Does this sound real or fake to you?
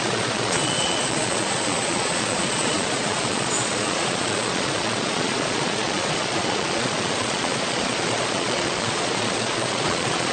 fake